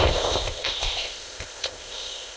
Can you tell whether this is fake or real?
fake